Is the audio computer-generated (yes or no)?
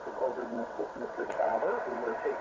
yes